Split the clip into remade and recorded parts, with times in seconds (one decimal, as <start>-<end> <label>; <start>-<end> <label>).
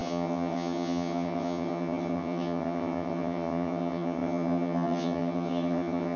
0.0-6.2 remade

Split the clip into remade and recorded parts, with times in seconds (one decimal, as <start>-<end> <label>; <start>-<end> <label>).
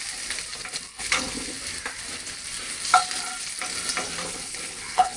0.0-0.9 recorded; 0.9-1.5 remade; 1.5-4.2 recorded; 4.2-5.2 remade